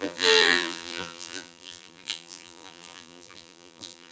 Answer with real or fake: fake